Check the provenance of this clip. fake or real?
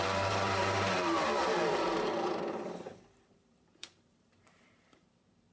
fake